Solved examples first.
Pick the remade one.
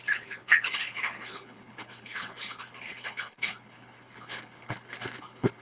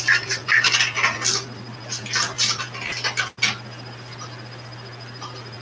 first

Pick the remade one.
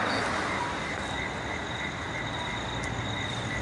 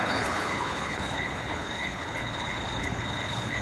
second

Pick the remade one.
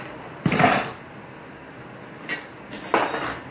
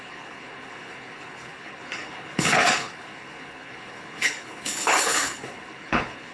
second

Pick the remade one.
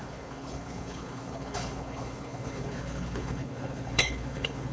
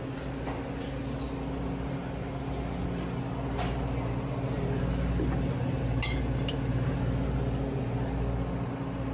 first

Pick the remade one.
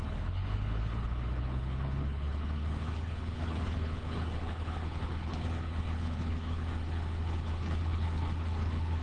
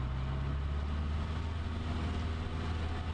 first